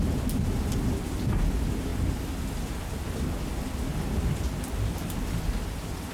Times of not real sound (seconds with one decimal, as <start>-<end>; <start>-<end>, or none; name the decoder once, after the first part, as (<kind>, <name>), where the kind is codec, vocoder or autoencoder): none